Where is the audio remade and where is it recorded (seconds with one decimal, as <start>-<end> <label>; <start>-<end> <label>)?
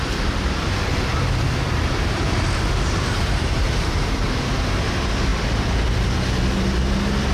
0.0-1.1 recorded; 1.1-4.5 remade; 4.5-7.3 recorded